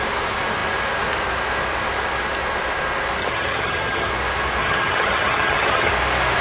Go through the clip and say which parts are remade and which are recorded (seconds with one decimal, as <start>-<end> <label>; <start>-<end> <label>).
0.0-3.2 recorded; 3.2-4.1 remade; 4.1-4.6 recorded; 4.6-5.9 remade; 5.9-6.4 recorded